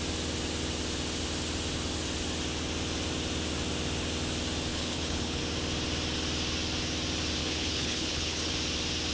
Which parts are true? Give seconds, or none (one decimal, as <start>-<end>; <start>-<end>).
0.0-4.7; 5.4-7.4; 8.5-9.1